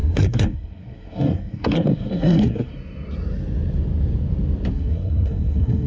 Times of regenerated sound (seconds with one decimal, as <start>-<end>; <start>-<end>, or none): 0.0-2.7; 4.7-5.9